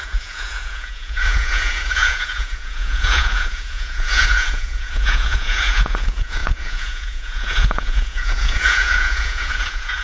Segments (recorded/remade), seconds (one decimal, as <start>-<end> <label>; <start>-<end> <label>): 0.0-10.0 remade